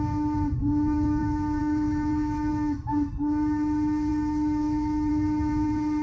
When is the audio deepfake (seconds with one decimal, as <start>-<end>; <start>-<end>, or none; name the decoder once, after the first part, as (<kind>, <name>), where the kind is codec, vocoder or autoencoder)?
0.6-1.2 (autoencoder, DAC-VAE); 1.6-2.9; 4.1-5.1